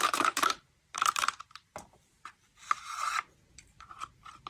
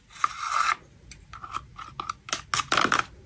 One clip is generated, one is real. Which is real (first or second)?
second